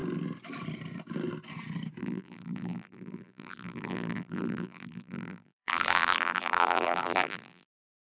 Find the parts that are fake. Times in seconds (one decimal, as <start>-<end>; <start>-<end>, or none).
2.0-8.0